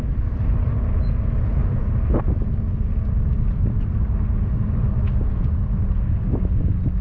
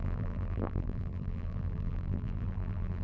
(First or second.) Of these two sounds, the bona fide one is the first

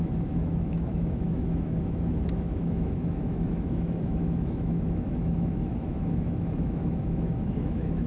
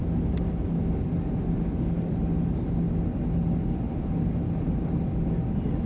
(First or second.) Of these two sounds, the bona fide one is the second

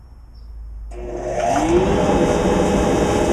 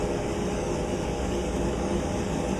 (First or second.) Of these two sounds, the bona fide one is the first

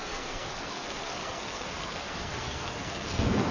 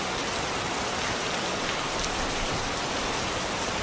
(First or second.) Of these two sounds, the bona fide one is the second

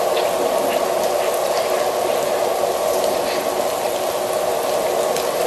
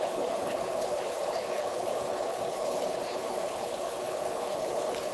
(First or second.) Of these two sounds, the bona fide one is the first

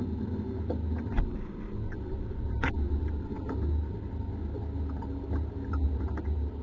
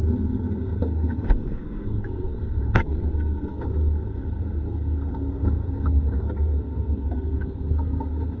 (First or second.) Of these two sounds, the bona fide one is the first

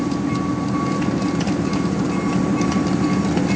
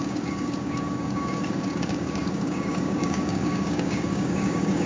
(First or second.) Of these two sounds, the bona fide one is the first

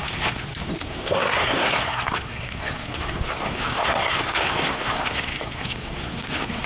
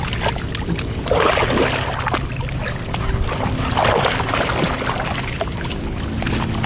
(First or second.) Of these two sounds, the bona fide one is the second